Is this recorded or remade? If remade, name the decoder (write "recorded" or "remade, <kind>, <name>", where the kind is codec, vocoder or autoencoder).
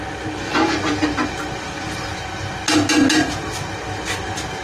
recorded